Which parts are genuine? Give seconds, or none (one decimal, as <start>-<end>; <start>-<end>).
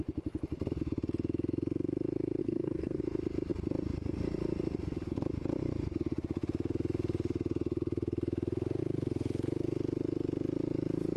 0.0-2.4; 3.0-11.2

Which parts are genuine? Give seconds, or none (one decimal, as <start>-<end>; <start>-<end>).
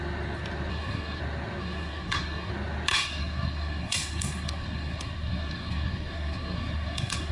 0.0-0.7; 1.2-1.6; 2.5-2.9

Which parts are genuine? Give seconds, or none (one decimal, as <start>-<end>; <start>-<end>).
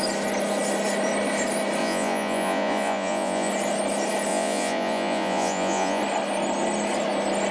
0.0-1.8; 3.5-4.3; 6.0-7.5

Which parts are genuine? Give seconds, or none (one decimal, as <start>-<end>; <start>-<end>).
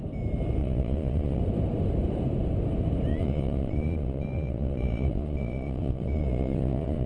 0.0-0.6; 1.4-3.1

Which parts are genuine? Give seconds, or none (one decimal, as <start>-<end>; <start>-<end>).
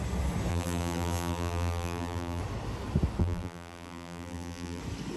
0.0-0.5; 2.4-3.2; 4.8-5.2